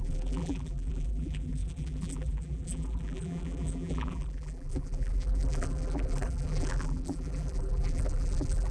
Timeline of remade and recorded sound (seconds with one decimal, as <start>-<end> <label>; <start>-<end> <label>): 0.0-8.7 remade